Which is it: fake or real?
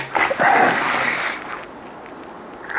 real